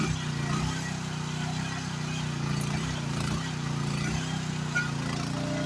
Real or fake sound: real